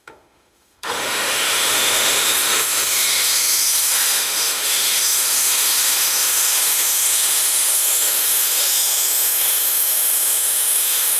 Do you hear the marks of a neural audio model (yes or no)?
yes